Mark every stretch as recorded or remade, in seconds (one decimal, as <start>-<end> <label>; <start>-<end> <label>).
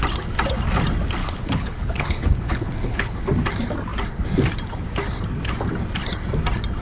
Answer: 0.0-1.2 recorded; 1.2-3.2 remade; 3.2-6.8 recorded